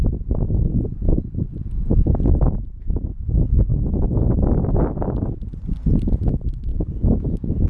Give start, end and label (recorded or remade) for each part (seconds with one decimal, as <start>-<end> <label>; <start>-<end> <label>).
0.0-0.7 recorded; 0.7-1.2 remade; 1.2-6.7 recorded; 6.7-7.7 remade